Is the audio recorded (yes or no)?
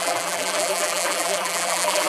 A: no